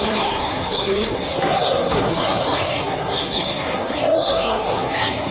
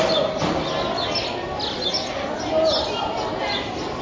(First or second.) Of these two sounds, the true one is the second